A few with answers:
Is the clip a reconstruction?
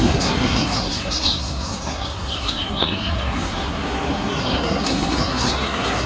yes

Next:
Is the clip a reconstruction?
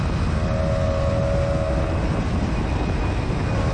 no